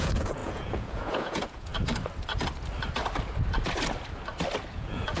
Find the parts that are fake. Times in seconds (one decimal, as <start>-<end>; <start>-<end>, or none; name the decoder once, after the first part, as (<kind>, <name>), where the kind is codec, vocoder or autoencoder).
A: 0.0-1.7 (vocoder, Vocos); 4.7-5.2